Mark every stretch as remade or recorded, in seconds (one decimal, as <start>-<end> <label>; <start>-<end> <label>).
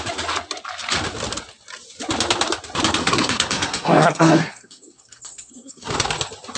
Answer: 0.0-3.0 recorded; 3.0-5.9 remade; 5.9-6.6 recorded